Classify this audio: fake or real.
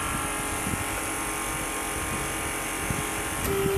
real